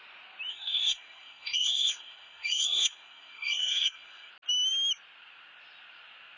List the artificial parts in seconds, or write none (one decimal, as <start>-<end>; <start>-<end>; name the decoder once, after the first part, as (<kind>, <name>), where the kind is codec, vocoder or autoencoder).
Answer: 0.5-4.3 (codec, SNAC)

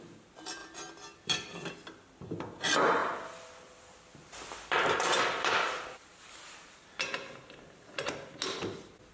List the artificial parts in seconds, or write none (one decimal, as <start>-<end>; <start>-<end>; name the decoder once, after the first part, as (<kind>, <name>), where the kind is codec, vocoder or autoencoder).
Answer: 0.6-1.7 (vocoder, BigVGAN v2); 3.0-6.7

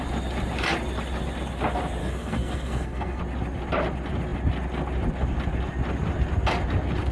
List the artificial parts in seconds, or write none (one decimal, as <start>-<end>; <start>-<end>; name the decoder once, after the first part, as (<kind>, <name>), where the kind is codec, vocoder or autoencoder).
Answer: 2.0-3.2 (codec, SNAC)

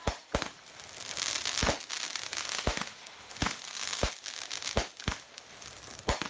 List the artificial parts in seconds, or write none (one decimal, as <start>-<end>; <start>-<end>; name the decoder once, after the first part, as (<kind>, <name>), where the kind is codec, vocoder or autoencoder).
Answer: 2.4-4.1 (autoencoder, DAC-VAE)

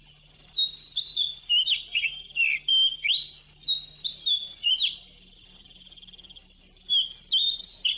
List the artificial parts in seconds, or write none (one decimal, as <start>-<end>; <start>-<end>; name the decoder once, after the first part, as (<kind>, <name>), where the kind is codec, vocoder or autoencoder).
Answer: none